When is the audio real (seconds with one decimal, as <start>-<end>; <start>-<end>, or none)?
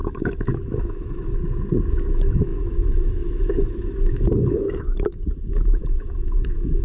1.4-1.9